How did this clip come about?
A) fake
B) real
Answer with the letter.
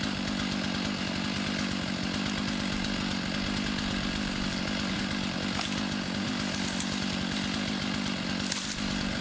B